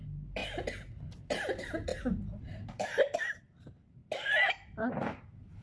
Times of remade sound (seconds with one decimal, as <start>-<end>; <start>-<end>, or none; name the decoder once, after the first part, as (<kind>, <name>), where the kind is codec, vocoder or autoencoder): 0.0-0.4 (vocoder, BigVGAN v2); 1.1-1.9; 2.4-4.0; 4.9-5.6